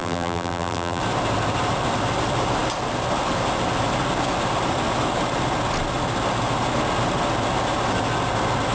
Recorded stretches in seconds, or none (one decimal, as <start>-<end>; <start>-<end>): 1.0-8.7